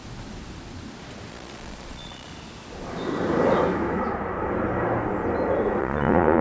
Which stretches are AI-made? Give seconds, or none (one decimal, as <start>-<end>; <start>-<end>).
1.3-2.3; 5.8-6.4